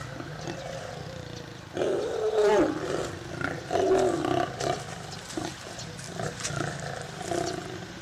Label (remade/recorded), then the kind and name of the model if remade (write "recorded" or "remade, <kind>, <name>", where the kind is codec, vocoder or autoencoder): recorded